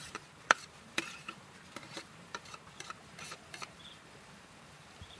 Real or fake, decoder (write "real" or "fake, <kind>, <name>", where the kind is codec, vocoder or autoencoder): fake, vocoder, BigVGAN v2